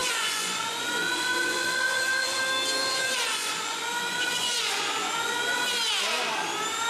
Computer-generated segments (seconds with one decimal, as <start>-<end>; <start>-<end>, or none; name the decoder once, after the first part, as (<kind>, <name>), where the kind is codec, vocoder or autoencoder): 0.0-2.4 (vocoder, Vocos); 2.8-5.4